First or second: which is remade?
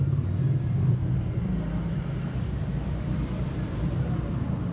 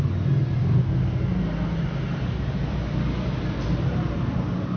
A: first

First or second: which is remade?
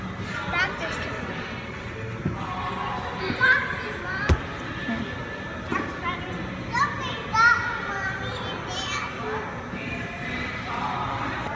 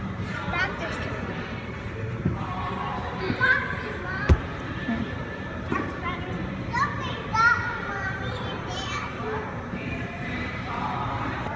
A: second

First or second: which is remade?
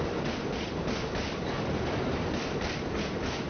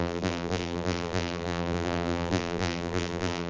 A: second